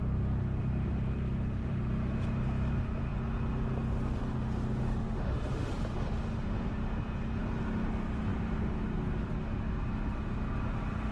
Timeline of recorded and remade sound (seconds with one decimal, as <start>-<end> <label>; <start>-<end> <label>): 0.0-4.8 recorded; 4.8-5.7 remade; 5.7-11.1 recorded